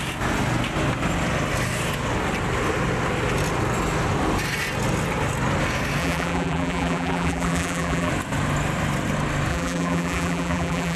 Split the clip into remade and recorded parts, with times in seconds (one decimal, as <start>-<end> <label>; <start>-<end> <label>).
0.0-6.0 recorded; 6.0-8.1 remade; 8.1-9.5 recorded; 9.5-11.0 remade